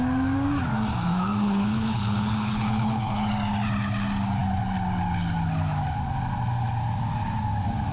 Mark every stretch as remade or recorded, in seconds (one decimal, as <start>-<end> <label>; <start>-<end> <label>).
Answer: 0.0-1.1 recorded; 1.1-3.3 remade; 3.3-7.9 recorded